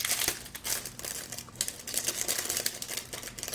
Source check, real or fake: real